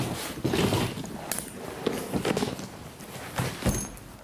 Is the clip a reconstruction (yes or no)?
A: no